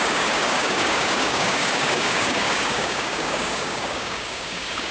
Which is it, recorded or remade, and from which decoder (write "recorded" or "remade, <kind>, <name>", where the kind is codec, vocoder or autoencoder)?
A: remade, codec, DAC